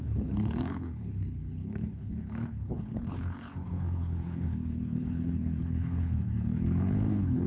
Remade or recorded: remade